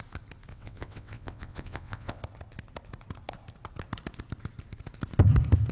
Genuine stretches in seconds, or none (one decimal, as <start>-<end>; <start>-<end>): 0.0-0.5; 2.2-5.7